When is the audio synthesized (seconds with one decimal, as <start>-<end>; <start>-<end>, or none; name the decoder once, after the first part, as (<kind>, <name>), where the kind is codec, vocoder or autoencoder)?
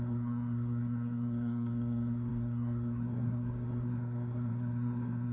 0.0-5.3 (codec, SNAC)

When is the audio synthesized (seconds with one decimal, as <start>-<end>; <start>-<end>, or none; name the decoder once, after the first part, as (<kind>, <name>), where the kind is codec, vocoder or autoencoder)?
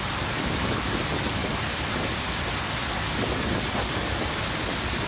1.4-2.5 (vocoder, BigVGAN v2)